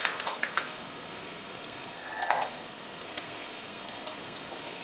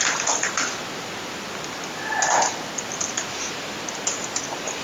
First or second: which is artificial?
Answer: first